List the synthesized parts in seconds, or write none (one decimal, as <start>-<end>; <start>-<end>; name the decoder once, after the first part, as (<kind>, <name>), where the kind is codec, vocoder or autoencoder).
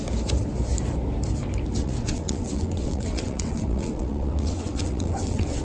1.8-5.6 (vocoder, WaveNeXt)